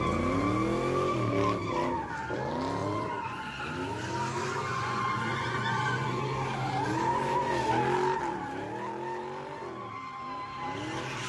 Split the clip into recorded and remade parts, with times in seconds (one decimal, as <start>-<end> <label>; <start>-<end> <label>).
0.0-2.8 recorded; 2.8-3.6 remade; 3.6-4.7 recorded; 4.7-6.2 remade; 6.2-11.3 recorded